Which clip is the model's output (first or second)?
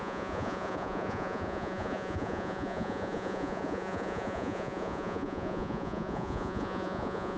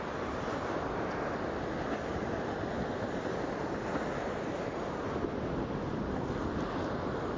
first